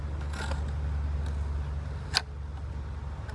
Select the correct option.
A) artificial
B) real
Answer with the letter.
B